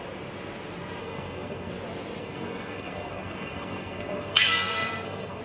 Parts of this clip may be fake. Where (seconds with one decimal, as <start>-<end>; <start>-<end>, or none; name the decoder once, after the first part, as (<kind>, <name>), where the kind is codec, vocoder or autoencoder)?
1.0-1.7 (codec, SNAC); 2.2-5.4